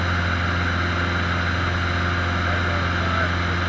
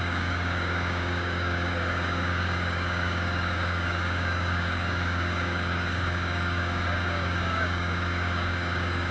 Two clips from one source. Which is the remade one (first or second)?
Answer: second